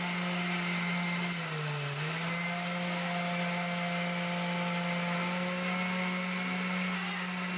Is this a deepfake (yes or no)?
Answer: no